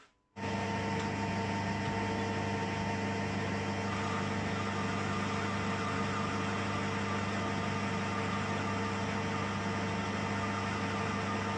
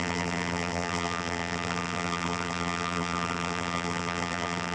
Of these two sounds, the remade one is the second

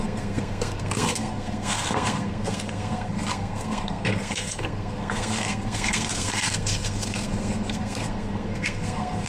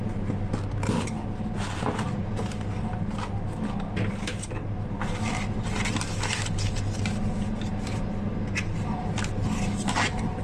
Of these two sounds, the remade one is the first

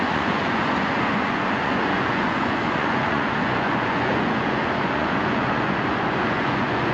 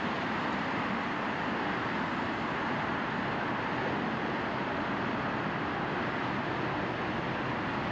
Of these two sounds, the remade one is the first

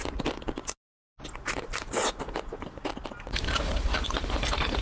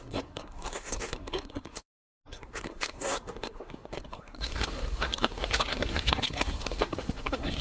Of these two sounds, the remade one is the second